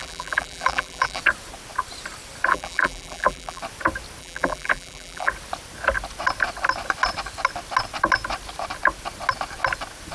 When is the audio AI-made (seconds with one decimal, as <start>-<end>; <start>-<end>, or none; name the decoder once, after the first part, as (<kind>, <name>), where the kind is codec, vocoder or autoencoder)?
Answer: 0.0-1.2 (vocoder, BigVGAN v2); 2.5-3.6; 4.2-5.3